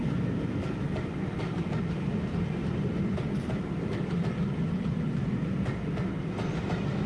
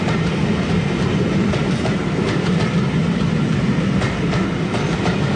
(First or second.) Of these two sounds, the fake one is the second